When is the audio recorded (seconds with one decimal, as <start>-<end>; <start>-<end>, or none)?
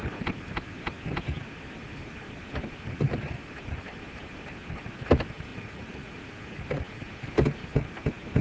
0.0-5.5; 6.3-8.4